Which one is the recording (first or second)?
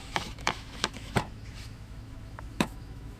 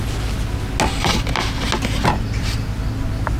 second